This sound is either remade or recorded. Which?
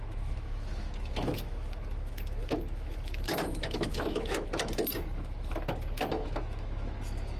remade